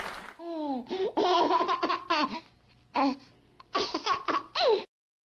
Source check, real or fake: real